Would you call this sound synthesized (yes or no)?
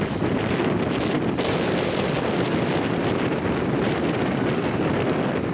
no